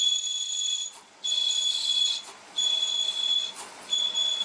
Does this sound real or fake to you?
fake